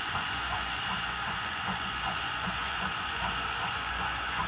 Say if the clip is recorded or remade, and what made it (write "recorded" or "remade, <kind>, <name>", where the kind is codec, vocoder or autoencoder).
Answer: remade, vocoder, Vocos